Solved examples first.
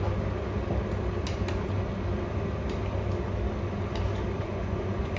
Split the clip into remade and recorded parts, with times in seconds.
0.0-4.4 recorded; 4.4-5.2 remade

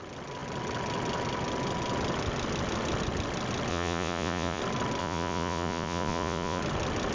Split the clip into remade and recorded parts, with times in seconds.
0.0-3.7 recorded; 3.7-4.6 remade; 4.6-5.0 recorded; 5.0-6.6 remade; 6.6-7.1 recorded

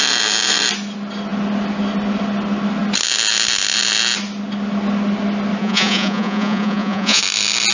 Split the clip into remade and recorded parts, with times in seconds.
0.0-5.6 recorded; 5.6-7.2 remade; 7.2-7.7 recorded

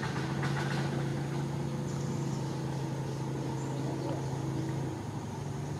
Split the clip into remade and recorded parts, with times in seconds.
0.0-5.8 recorded

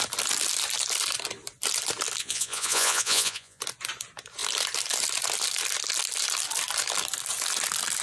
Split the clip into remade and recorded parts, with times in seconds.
0.0-2.2 recorded; 2.2-3.6 remade; 3.6-8.0 recorded

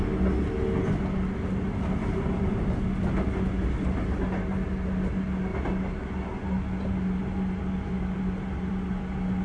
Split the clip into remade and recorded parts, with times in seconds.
0.0-9.4 recorded

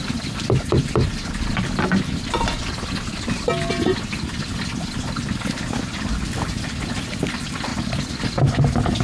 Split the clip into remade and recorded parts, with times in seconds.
0.0-9.0 recorded

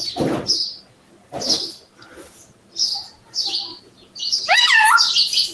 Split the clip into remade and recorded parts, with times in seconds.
0.0-2.8 recorded; 2.8-3.3 remade; 3.3-3.7 recorded; 3.7-5.0 remade; 5.0-5.5 recorded